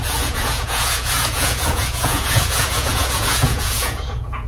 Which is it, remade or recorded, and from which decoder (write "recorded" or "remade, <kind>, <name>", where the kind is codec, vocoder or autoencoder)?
remade, vocoder, Vocos